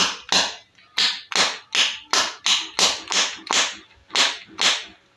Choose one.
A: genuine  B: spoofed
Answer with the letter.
A